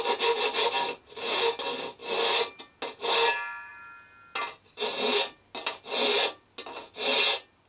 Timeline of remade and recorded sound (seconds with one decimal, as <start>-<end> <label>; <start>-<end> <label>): 0.0-7.7 recorded